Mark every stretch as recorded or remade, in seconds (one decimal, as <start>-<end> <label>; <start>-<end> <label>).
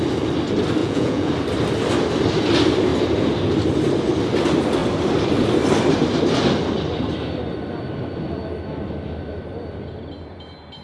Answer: 0.0-0.8 recorded; 0.8-1.3 remade; 1.3-10.8 recorded